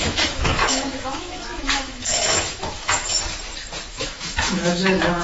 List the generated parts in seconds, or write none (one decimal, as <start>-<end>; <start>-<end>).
0.0-3.1; 3.9-5.2